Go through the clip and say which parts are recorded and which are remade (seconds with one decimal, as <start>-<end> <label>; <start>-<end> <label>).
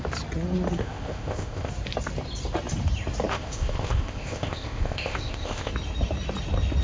0.0-0.8 recorded; 0.8-1.7 remade; 1.7-3.3 recorded; 3.3-5.7 remade; 5.7-6.8 recorded